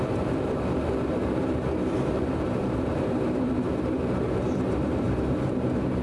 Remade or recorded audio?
remade